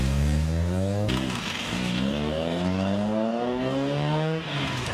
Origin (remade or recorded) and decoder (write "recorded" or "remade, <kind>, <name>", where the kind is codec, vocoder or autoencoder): remade, codec, DAC